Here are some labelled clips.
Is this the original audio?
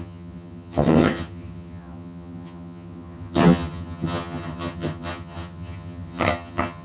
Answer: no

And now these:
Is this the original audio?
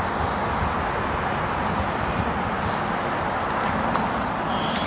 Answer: yes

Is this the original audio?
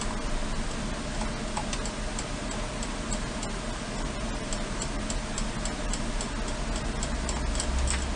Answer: yes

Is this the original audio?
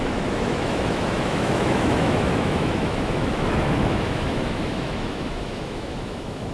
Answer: no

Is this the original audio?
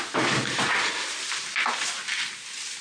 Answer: yes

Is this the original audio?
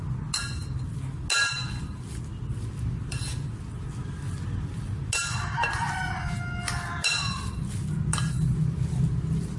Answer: yes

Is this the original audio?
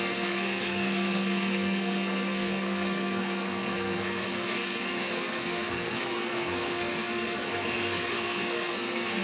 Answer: no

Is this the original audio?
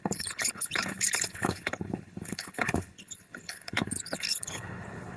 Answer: no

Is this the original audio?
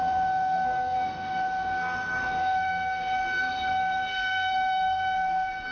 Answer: no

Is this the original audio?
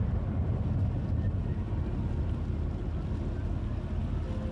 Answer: yes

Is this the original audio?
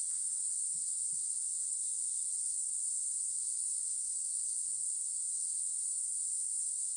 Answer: no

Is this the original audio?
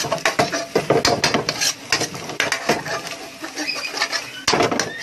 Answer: yes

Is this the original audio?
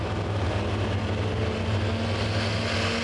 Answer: yes